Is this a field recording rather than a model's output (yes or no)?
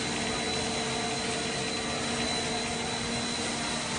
yes